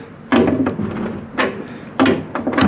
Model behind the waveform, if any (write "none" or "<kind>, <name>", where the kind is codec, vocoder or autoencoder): none